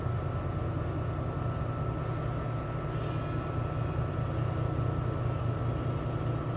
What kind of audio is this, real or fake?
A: real